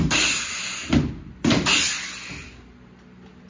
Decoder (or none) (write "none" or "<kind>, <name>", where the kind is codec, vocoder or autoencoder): none